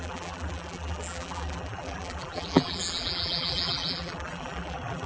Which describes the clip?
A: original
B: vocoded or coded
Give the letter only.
B